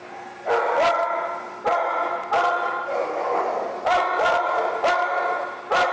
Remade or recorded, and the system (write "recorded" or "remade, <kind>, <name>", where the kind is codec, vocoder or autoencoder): recorded